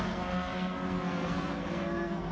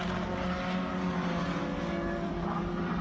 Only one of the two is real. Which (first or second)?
second